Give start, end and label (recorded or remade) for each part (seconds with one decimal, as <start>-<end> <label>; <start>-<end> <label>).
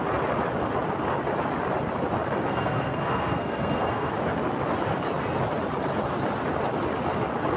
0.0-2.5 recorded; 2.5-4.1 remade; 4.1-7.6 recorded